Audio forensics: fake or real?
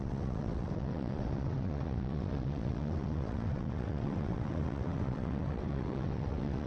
fake